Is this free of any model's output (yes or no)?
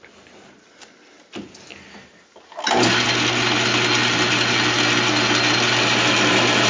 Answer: yes